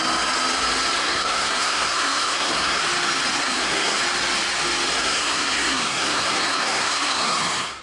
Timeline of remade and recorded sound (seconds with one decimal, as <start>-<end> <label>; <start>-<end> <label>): 0.0-1.0 recorded; 1.0-2.8 remade; 2.8-3.4 recorded; 3.4-4.0 remade; 4.0-5.0 recorded; 5.0-7.8 remade